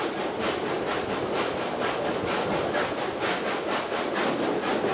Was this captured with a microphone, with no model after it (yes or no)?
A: yes